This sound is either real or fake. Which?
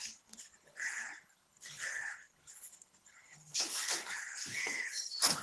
fake